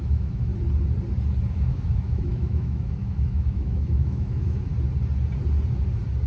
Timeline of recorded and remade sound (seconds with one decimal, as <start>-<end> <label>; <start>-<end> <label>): 0.0-0.5 remade; 0.5-1.5 recorded; 1.5-4.7 remade; 4.7-6.3 recorded